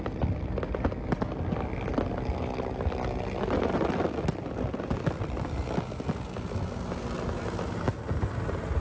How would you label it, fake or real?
real